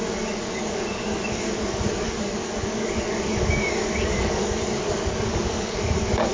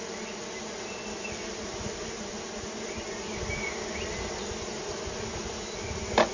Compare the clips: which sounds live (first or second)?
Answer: second